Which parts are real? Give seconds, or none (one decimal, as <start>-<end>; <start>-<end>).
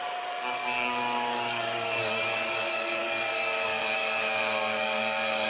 none